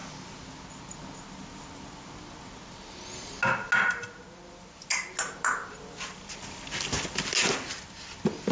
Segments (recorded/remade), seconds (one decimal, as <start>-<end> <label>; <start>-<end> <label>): 0.0-8.5 recorded